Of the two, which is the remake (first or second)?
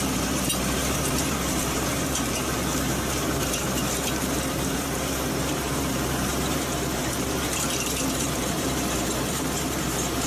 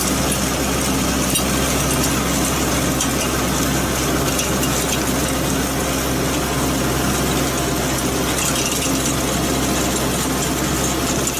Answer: first